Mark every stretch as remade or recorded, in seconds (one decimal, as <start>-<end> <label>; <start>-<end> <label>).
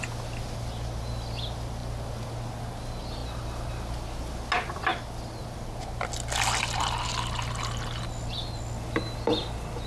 0.0-9.9 recorded